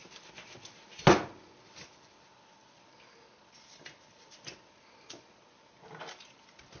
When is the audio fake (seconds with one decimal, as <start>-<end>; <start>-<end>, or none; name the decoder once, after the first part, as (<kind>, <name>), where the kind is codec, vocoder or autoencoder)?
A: none